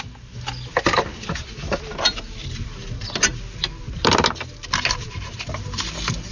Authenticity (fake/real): real